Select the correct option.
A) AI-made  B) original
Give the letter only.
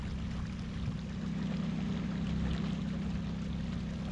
B